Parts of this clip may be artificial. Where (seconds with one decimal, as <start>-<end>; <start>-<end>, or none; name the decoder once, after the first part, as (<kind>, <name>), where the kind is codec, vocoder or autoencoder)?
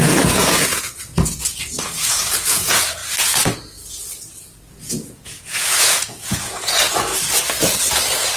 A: 0.0-3.0 (vocoder, Vocos); 4.7-7.1